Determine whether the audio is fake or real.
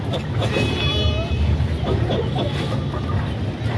real